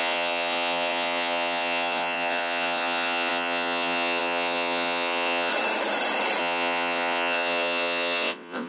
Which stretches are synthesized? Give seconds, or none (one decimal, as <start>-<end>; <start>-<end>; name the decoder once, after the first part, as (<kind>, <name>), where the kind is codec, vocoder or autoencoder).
0.0-5.5 (vocoder, WaveNeXt); 6.4-8.7